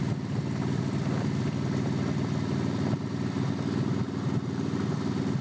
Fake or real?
real